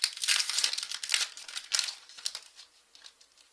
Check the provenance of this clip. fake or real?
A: real